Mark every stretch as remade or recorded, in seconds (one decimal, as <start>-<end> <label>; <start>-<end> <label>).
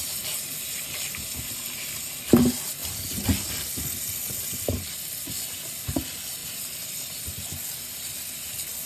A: 0.0-6.4 recorded; 6.4-7.2 remade; 7.2-8.9 recorded